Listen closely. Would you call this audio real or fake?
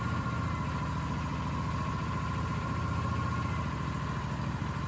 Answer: real